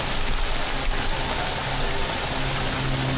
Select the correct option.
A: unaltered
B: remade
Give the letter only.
A